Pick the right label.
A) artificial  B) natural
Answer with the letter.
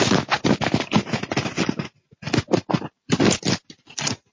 B